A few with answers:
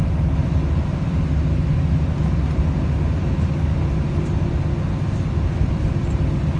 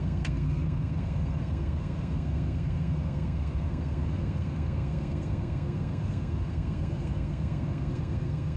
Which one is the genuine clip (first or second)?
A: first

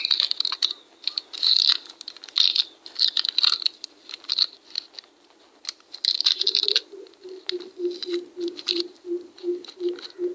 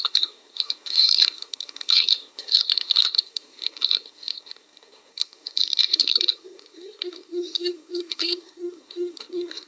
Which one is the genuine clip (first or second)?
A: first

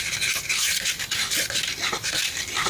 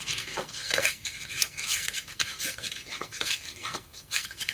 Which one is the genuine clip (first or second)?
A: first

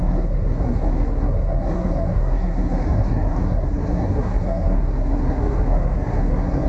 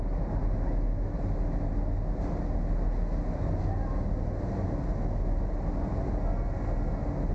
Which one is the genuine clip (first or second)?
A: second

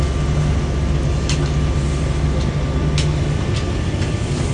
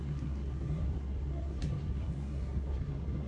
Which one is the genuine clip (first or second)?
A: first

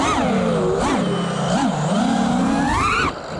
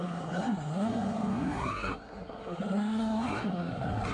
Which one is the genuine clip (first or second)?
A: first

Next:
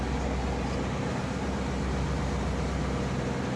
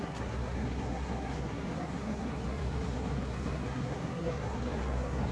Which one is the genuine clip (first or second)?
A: first